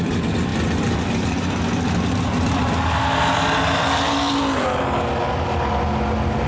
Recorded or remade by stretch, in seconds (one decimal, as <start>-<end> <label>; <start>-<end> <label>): 0.0-6.5 recorded